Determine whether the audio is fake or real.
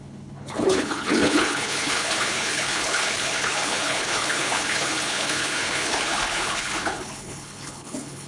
fake